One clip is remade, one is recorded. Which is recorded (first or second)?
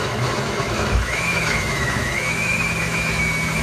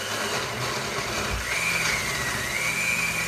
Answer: second